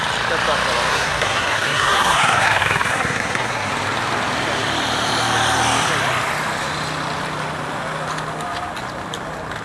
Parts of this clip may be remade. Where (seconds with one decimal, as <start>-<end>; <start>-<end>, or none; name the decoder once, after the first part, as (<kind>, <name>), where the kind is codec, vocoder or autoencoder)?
0.9-3.7 (codec, SNAC)